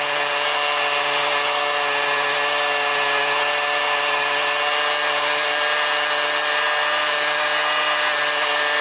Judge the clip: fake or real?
real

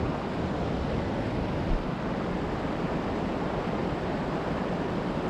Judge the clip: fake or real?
real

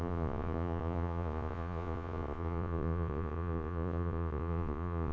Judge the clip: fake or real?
fake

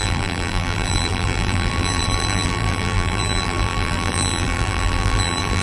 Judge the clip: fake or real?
fake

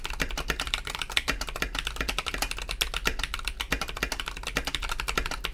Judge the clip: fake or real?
real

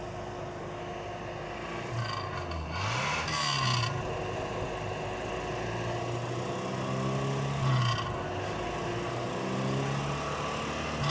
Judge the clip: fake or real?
real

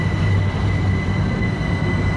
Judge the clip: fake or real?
real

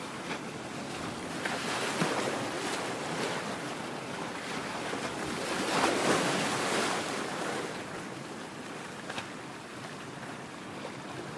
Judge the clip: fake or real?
real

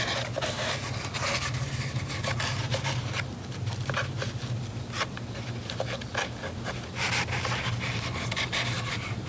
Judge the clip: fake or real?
real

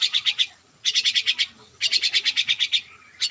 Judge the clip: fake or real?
real